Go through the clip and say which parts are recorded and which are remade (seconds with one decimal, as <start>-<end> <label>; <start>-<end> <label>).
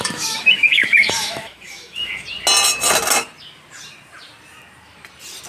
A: 0.0-2.1 remade; 2.1-5.5 recorded